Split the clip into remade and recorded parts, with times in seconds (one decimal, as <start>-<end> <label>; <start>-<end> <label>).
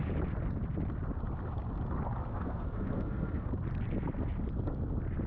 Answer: 0.0-2.3 recorded; 2.3-3.5 remade; 3.5-5.3 recorded